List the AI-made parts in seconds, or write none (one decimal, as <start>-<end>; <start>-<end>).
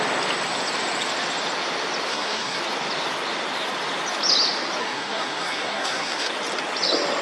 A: 2.1-2.6; 4.8-6.3